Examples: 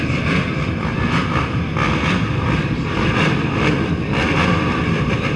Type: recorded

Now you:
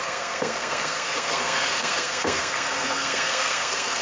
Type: remade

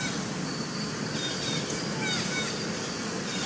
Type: recorded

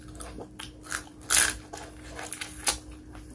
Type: recorded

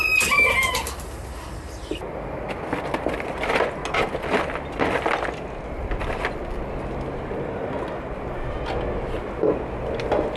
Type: recorded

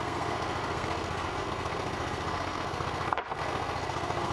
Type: remade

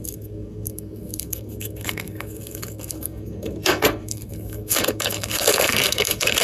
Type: remade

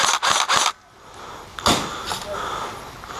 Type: recorded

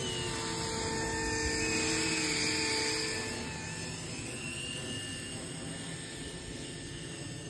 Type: recorded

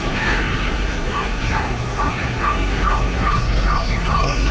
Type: remade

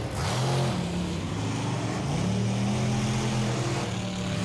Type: recorded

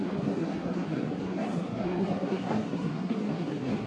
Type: remade